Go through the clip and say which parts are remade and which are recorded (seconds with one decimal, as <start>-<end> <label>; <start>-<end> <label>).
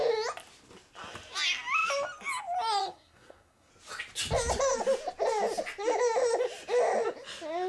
0.0-2.8 recorded; 2.8-3.7 remade; 3.7-7.7 recorded